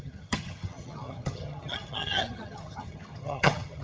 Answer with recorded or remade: remade